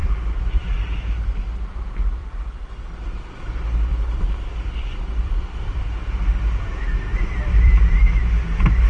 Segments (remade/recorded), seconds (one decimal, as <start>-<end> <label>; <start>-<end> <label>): 0.0-0.6 remade; 0.6-2.2 recorded; 2.2-3.3 remade; 3.3-3.9 recorded; 3.9-5.8 remade; 5.8-7.1 recorded; 7.1-8.1 remade; 8.1-8.9 recorded